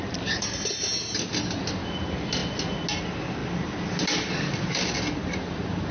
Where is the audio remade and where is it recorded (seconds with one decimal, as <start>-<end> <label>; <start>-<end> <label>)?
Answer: 0.0-5.9 recorded